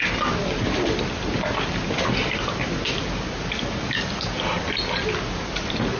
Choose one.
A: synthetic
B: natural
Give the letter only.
B